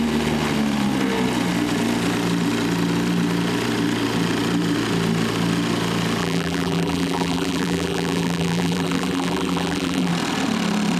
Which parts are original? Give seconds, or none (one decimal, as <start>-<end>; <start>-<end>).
0.0-6.2; 10.1-11.0